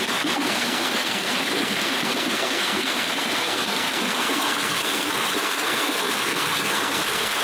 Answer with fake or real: fake